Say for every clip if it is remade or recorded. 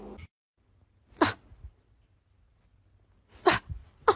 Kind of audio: recorded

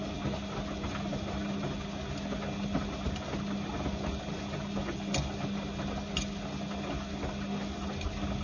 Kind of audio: recorded